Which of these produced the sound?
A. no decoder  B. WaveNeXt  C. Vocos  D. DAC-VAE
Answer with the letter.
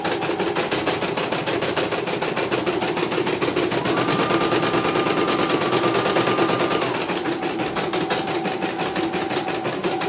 A